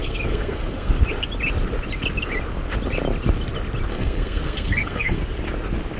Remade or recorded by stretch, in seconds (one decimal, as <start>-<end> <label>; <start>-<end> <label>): 0.0-0.9 remade; 0.9-3.9 recorded; 3.9-5.2 remade; 5.2-6.0 recorded